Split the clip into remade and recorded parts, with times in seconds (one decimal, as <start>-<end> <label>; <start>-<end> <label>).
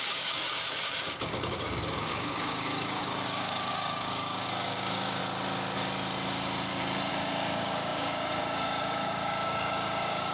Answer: 0.0-5.2 remade; 5.2-7.1 recorded; 7.1-10.3 remade